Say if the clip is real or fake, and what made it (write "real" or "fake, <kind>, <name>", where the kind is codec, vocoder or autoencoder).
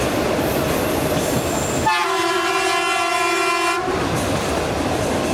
real